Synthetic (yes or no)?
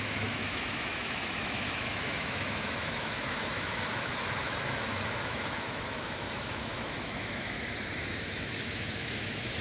yes